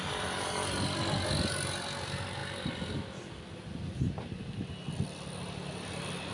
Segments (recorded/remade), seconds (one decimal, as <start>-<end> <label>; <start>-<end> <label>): 0.0-6.3 recorded